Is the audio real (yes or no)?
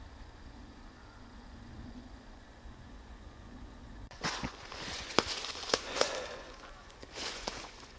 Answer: no